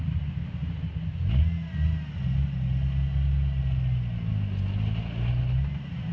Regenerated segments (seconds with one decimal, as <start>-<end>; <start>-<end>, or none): none